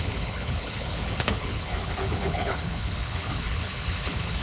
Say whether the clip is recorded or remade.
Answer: remade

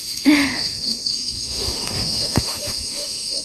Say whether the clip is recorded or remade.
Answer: remade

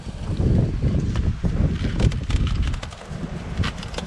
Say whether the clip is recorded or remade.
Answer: recorded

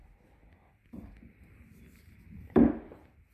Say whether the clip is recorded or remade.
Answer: remade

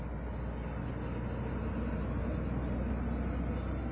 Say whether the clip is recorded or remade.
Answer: recorded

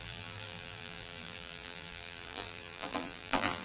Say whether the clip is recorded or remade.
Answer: remade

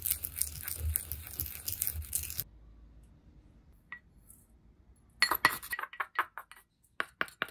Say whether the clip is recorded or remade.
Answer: recorded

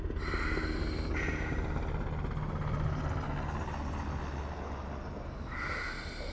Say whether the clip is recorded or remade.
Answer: recorded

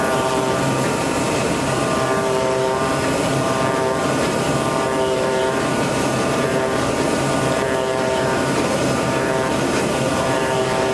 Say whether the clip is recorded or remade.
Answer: remade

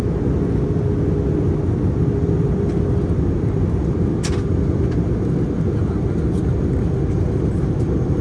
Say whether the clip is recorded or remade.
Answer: recorded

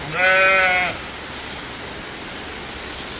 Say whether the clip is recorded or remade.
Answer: recorded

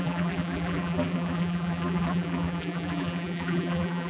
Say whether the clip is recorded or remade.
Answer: remade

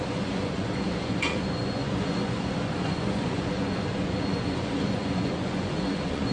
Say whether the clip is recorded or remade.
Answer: remade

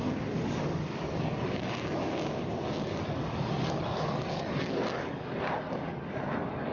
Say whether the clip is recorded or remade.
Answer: remade